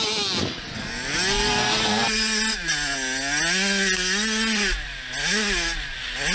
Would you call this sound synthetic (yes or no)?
no